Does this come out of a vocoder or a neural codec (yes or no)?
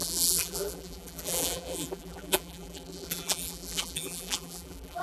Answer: yes